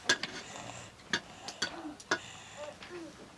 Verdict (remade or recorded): recorded